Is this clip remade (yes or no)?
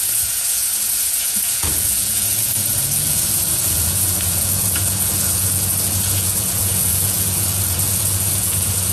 yes